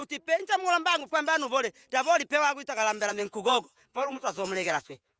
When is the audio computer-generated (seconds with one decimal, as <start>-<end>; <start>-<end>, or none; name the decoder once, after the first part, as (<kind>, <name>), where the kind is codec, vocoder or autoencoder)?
3.1-5.2 (vocoder, Vocos)